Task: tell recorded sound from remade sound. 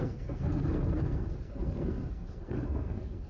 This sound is remade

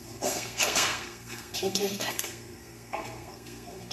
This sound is remade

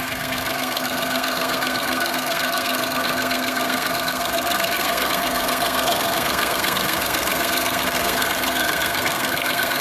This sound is remade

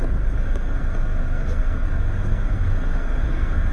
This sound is remade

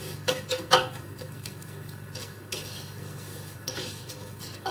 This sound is remade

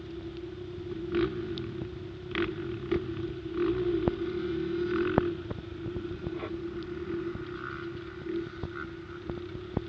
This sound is recorded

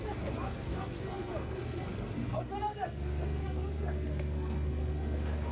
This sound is remade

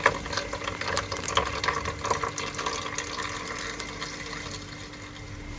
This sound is recorded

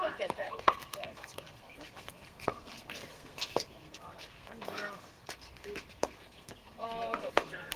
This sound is remade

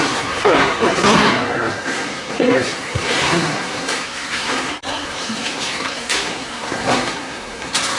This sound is remade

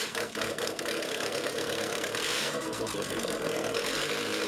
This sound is remade